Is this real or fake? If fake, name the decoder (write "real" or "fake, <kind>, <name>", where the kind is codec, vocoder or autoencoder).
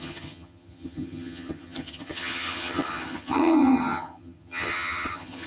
fake, vocoder, HiFi-GAN